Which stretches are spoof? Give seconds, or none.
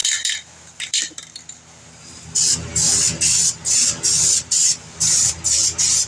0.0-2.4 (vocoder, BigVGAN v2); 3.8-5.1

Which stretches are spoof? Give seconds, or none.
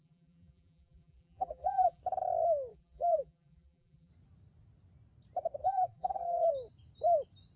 0.0-2.0 (vocoder, BigVGAN v2); 2.7-4.1; 5.6-6.5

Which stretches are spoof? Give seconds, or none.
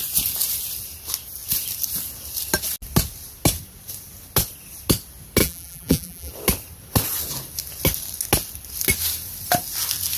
5.4-6.3 (vocoder, BigVGAN v2)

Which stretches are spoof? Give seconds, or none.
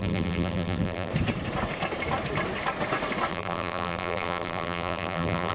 0.0-1.1 (vocoder, BigVGAN v2); 3.3-5.5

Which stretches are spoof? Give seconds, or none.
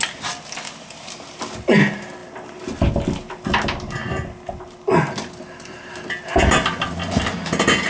none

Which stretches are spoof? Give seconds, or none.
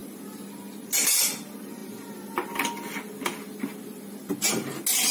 none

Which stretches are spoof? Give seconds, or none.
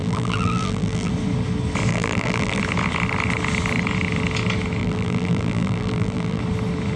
0.0-1.1 (vocoder, BigVGAN v2); 1.9-2.6; 4.8-6.4